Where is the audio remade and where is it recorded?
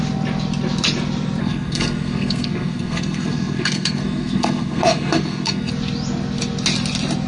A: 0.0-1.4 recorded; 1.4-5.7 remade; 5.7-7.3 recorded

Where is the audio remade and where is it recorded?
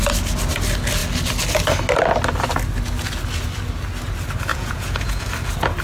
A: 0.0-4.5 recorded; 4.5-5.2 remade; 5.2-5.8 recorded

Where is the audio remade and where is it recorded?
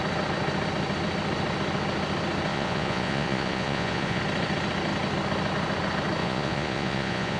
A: 0.0-2.5 recorded; 2.5-4.2 remade; 4.2-6.2 recorded; 6.2-7.4 remade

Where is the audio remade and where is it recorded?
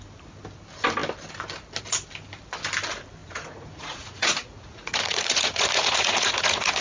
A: 0.0-3.2 recorded; 3.2-6.8 remade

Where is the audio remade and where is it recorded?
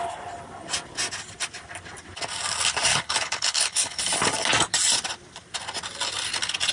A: 0.0-2.9 recorded; 2.9-4.0 remade; 4.0-6.7 recorded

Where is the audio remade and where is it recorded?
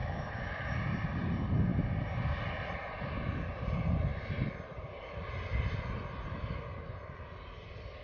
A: 0.0-0.8 remade; 0.8-8.0 recorded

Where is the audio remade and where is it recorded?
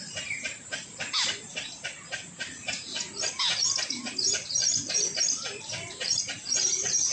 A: 0.0-7.1 recorded